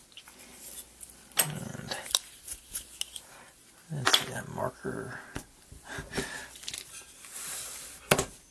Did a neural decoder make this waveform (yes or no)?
no